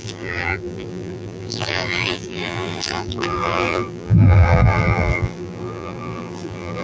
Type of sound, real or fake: fake